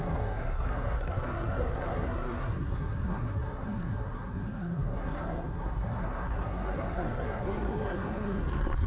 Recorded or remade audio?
remade